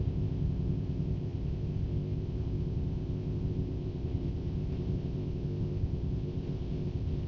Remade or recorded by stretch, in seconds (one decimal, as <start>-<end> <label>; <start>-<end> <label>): 0.0-7.3 remade